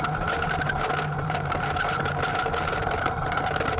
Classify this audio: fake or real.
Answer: fake